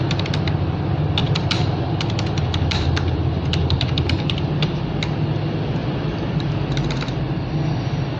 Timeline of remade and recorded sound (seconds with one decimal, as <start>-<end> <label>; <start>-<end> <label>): 0.0-1.2 recorded; 1.2-4.9 remade; 4.9-5.8 recorded; 5.8-6.5 remade; 6.5-8.2 recorded